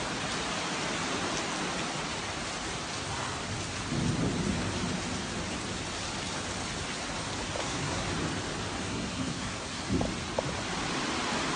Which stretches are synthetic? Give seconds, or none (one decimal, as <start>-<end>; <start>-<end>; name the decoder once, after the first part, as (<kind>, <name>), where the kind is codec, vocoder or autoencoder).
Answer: 7.6-8.1 (codec, SNAC); 8.8-9.8